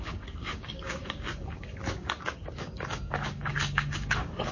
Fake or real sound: fake